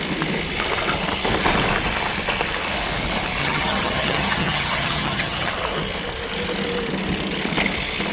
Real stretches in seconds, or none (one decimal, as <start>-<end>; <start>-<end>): 0.0-3.4; 5.5-8.1